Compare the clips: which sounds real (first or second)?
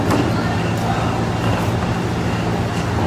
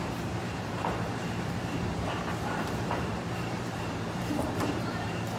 first